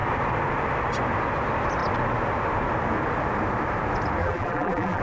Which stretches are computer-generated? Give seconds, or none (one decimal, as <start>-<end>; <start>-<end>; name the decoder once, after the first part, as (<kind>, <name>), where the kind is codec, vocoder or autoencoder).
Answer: 4.2-5.0 (vocoder, BigVGAN v2)